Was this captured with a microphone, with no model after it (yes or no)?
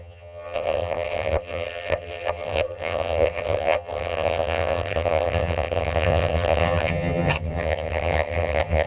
no